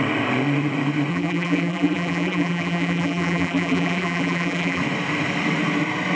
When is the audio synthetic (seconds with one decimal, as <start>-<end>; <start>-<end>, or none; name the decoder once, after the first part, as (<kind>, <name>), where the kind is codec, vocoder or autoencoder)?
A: 1.1-4.8 (vocoder, BigVGAN v2)